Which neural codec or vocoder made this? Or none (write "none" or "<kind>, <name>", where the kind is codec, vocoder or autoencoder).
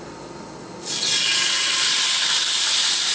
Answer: none